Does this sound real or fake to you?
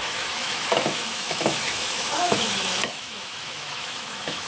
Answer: fake